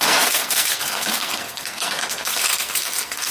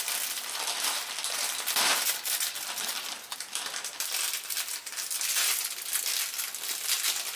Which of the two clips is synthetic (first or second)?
first